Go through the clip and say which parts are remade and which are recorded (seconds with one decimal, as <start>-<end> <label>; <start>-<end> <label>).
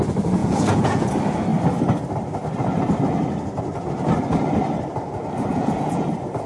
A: 0.0-0.4 recorded; 0.4-1.1 remade; 1.1-5.5 recorded; 5.5-6.1 remade; 6.1-6.5 recorded